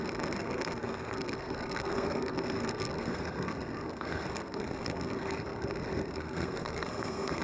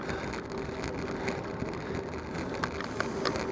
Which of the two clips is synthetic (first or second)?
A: first